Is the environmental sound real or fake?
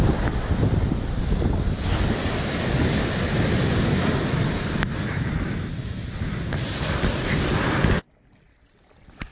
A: real